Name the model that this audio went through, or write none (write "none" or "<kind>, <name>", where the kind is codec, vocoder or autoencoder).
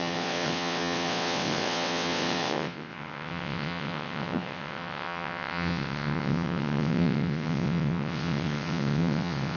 vocoder, WaveNeXt